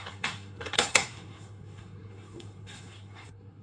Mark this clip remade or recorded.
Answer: remade